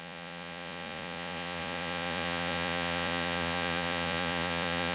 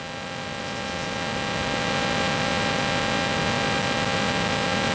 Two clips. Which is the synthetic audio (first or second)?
first